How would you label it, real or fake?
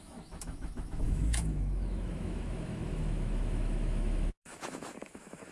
fake